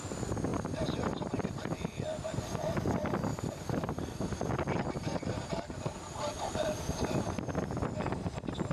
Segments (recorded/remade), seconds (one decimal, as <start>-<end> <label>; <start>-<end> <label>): 0.0-0.5 recorded; 0.5-1.7 remade; 1.7-3.3 recorded; 3.3-7.2 remade; 7.2-8.7 recorded